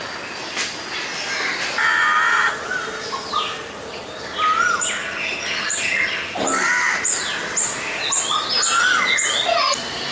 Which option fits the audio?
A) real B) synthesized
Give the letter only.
A